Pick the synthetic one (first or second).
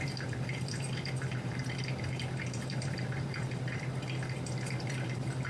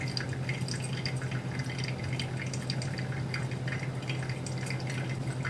first